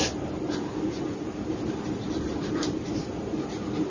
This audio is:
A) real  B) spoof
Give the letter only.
A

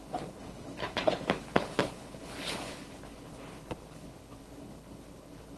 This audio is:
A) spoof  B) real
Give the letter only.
A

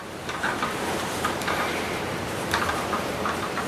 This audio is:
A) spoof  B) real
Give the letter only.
A